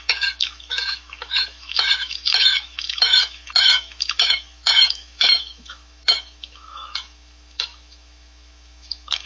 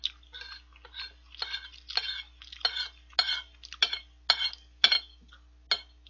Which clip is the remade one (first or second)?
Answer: first